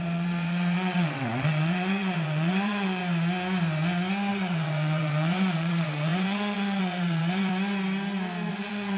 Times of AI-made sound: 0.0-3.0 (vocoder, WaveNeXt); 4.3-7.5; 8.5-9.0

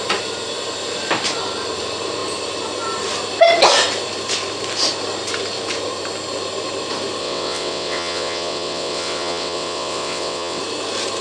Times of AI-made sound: 7.2-10.6 (vocoder, WaveNeXt)

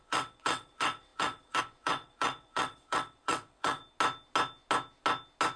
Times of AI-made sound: 0.0-3.8 (vocoder, WaveNeXt)

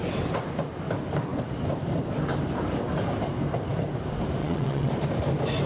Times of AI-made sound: 4.4-4.9 (vocoder, WaveNeXt)

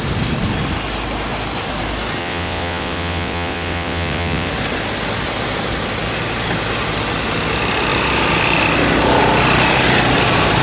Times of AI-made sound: 2.2-4.5 (vocoder, WaveNeXt)

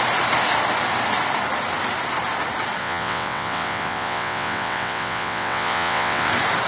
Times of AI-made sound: 2.8-6.3 (vocoder, WaveNeXt)